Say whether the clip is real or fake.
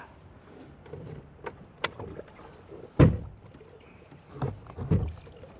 real